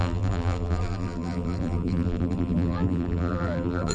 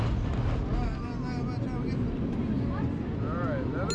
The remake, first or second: first